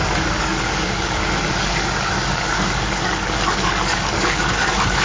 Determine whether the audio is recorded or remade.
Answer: remade